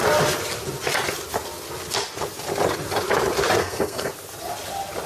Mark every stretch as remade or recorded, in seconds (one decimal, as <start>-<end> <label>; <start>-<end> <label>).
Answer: 0.0-3.6 recorded; 3.6-4.1 remade; 4.1-5.1 recorded